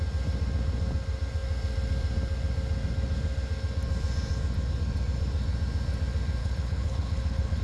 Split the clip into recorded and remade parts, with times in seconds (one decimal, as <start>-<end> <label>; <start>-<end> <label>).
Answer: 0.0-6.4 recorded; 6.4-7.6 remade